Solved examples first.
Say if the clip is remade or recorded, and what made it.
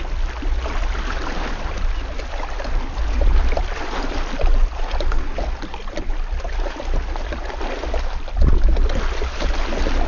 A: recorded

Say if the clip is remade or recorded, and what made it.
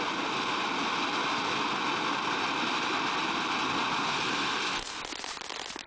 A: recorded